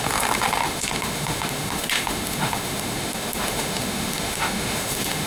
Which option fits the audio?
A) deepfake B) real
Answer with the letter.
A